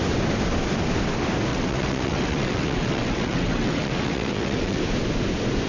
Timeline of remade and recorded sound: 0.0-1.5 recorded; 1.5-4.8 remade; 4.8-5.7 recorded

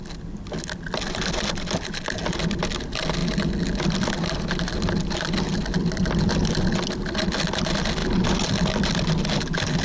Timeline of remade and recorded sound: 0.0-9.8 recorded

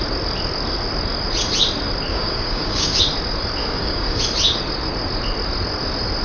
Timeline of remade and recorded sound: 0.0-2.1 recorded; 2.1-3.0 remade; 3.0-3.6 recorded; 3.6-4.2 remade; 4.2-6.2 recorded